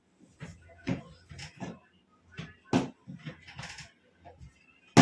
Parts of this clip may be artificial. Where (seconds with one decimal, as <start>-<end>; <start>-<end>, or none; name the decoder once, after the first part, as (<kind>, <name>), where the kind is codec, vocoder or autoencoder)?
0.5-1.0 (vocoder, Vocos)